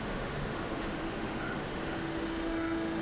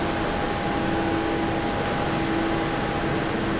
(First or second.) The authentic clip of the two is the second